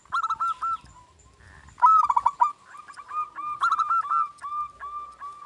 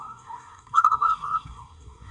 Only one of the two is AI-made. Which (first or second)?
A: second